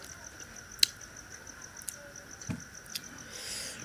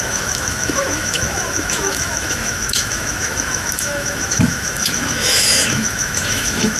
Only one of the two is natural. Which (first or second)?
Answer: first